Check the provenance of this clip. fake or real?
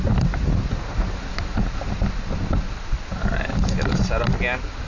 real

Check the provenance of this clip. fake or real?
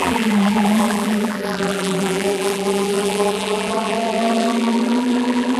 fake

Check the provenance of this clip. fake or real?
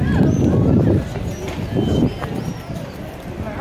real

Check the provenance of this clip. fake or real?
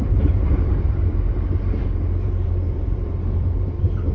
fake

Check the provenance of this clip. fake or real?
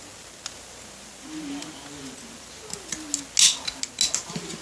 real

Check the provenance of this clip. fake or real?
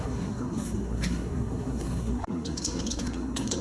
fake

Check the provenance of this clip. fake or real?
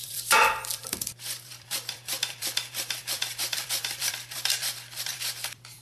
fake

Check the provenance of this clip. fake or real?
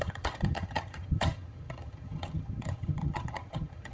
fake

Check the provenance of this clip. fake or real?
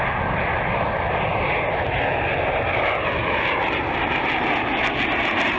real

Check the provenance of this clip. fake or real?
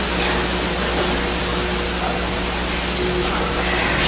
real